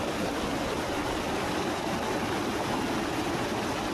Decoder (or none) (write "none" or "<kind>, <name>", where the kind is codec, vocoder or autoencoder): none